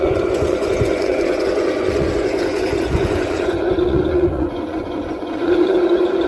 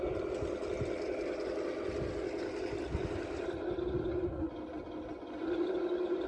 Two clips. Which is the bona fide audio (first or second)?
second